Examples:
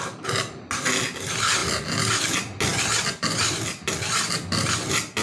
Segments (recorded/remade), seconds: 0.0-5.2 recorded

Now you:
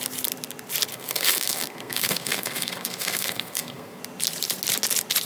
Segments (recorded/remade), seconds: 0.0-0.9 recorded; 0.9-4.0 remade; 4.0-5.2 recorded

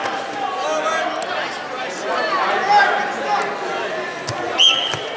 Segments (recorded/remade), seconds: 0.0-5.2 recorded

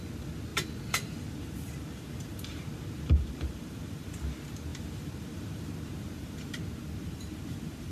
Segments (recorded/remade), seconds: 0.0-0.5 recorded; 0.5-4.2 remade; 4.2-4.7 recorded; 4.7-6.6 remade; 6.6-7.0 recorded; 7.0-7.9 remade